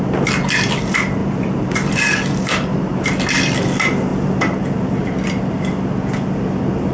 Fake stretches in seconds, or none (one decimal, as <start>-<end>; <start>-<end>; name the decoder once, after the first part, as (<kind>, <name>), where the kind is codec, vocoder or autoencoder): 1.2-1.9 (vocoder, BigVGAN v2)